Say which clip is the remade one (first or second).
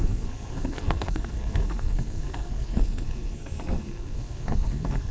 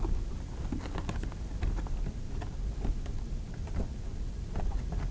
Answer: first